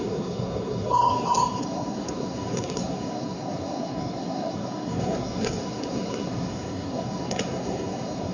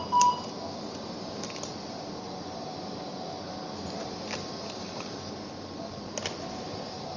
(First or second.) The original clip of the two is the second